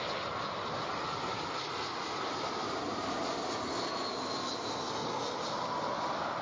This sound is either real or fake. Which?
real